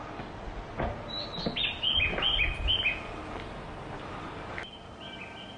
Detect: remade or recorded recorded